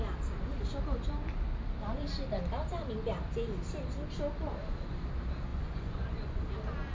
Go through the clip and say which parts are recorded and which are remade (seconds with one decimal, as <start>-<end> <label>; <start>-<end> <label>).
0.0-5.5 recorded; 5.5-6.4 remade; 6.4-6.9 recorded